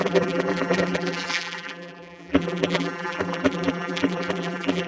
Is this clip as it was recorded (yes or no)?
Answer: no